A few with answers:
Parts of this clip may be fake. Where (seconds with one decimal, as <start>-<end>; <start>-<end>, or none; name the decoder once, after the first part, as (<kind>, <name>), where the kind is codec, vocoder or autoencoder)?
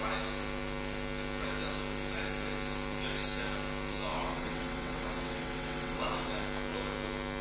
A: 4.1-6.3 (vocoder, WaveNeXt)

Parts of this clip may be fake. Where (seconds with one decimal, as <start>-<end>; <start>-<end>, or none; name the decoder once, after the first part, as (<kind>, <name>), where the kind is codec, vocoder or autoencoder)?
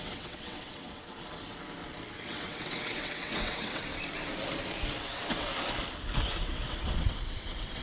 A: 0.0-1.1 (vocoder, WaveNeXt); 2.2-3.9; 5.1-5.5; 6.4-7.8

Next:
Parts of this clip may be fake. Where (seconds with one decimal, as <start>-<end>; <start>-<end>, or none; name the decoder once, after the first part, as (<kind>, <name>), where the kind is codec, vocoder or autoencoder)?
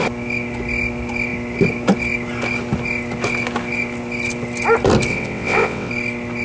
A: 5.1-5.9 (vocoder, WaveNeXt)